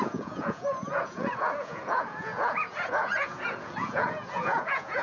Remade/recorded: remade